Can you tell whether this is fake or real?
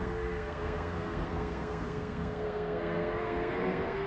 fake